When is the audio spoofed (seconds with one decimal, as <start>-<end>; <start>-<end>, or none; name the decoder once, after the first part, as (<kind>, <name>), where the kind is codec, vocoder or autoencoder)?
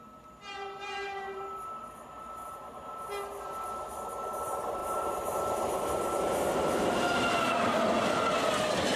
0.8-1.8 (vocoder, BigVGAN v2); 4.8-5.4